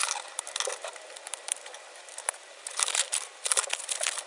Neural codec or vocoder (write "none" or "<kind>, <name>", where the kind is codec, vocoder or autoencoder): none